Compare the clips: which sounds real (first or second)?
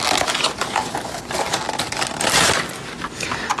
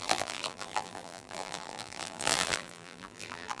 first